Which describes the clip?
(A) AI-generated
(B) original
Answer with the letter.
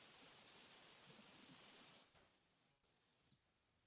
A